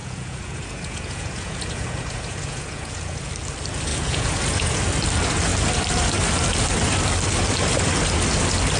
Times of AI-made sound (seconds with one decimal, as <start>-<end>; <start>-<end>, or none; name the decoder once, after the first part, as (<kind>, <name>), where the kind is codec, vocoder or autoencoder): 0.0-3.3 (vocoder, Vocos); 3.9-4.8